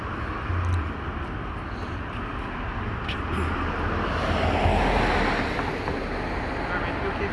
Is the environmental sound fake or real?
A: real